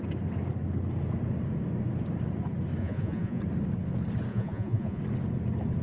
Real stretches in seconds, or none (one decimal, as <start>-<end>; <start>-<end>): 0.0-2.8; 3.4-4.3; 5.0-5.8